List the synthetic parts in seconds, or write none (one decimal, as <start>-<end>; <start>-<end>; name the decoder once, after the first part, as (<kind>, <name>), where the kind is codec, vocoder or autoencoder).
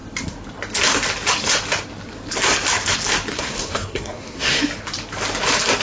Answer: 3.3-4.6 (codec, SNAC)